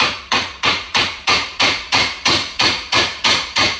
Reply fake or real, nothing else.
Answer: fake